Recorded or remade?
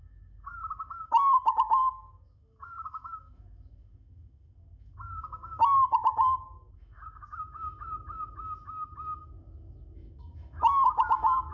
remade